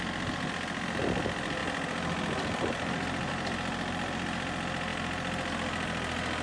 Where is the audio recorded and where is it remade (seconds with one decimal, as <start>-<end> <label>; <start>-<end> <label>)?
0.0-6.4 recorded